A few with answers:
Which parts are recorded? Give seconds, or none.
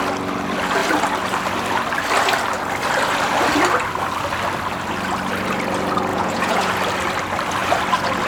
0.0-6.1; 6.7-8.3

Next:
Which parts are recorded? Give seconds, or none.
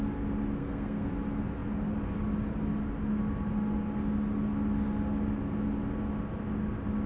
0.0-0.6; 1.1-7.1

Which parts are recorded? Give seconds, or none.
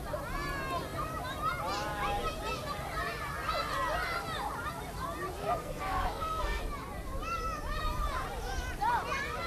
0.0-5.4; 6.6-9.5